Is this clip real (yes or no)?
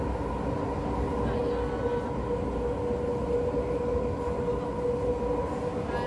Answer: yes